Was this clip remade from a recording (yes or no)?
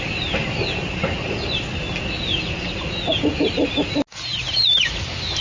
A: no